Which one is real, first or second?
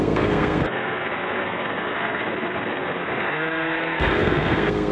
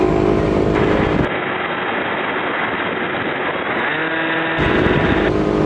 second